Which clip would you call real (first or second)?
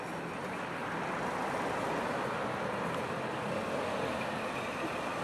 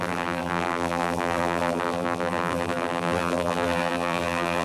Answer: first